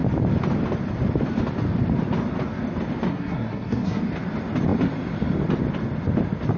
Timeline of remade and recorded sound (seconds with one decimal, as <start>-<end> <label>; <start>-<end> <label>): 0.0-3.1 recorded; 3.1-4.0 remade; 4.0-6.6 recorded